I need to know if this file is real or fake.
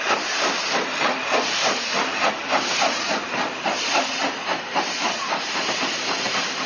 fake